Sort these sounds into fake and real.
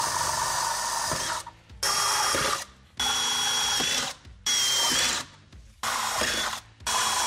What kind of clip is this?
real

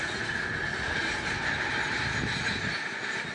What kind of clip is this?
real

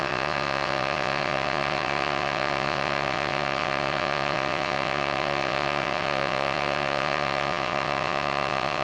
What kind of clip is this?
fake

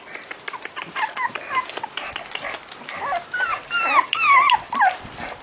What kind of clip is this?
real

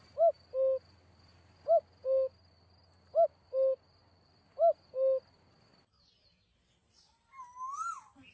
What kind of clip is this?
real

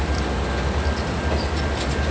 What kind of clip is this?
real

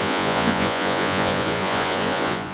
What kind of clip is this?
fake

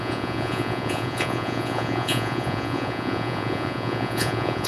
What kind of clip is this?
fake